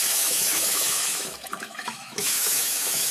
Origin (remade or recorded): remade